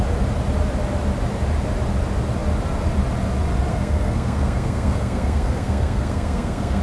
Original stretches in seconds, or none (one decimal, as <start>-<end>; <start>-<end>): 0.0-3.7